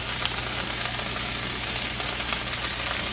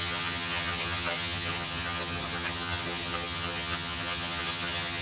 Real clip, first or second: first